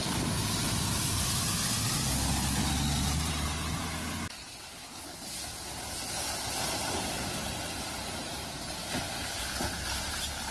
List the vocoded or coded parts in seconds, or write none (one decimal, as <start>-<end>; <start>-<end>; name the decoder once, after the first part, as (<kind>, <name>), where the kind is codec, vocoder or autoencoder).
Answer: 4.7-5.3 (codec, HILCodec)